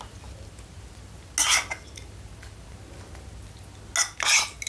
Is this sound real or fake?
real